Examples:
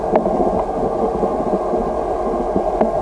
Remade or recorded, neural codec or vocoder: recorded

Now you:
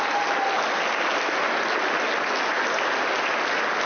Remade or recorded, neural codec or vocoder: recorded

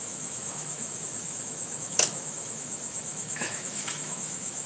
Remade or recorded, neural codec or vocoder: remade, autoencoder, DAC-VAE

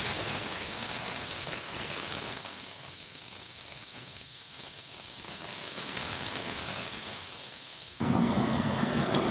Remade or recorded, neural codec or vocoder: remade, codec, SNAC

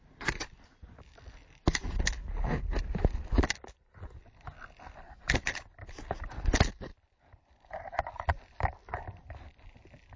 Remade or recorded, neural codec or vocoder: recorded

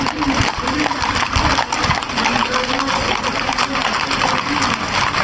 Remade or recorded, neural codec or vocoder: recorded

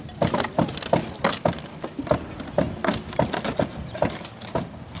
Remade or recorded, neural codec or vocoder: recorded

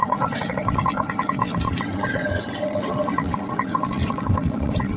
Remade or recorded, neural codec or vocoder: remade, vocoder, WaveNeXt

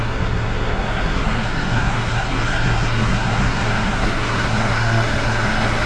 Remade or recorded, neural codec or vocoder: remade, codec, SNAC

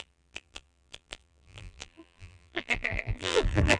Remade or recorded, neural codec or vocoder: remade, vocoder, BigVGAN v2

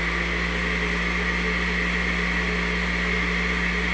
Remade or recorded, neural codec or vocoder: recorded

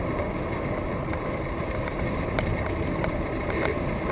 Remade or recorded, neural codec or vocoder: remade, vocoder, BigVGAN v2